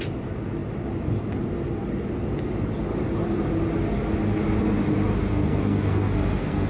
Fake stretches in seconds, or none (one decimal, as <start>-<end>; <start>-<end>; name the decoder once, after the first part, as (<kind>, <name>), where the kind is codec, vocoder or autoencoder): 5.3-6.7 (codec, SNAC)